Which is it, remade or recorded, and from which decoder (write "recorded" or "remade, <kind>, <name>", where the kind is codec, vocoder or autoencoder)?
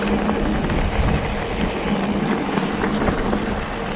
recorded